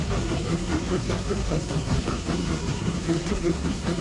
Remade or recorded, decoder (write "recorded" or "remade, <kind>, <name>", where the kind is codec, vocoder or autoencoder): remade, codec, SNAC